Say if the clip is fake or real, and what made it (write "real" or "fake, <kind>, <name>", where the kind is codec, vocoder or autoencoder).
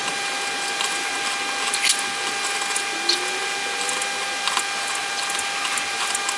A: real